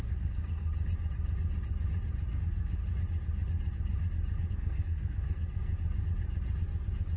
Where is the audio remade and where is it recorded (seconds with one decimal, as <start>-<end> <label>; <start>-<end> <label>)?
0.0-0.7 remade; 0.7-2.3 recorded; 2.3-2.8 remade; 2.8-4.5 recorded; 4.5-5.7 remade; 5.7-7.2 recorded